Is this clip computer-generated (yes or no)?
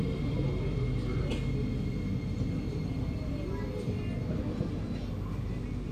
no